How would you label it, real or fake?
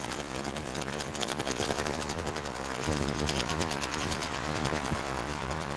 fake